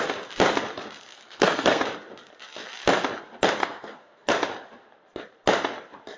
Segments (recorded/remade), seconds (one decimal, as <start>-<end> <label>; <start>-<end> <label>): 0.0-1.1 recorded; 1.1-1.8 remade; 1.8-3.6 recorded; 3.6-4.3 remade; 4.3-6.2 recorded